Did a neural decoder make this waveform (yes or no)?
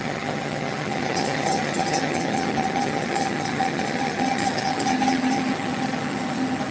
yes